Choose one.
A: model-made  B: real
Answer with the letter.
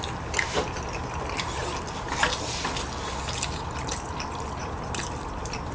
B